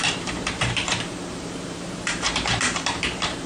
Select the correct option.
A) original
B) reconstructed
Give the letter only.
B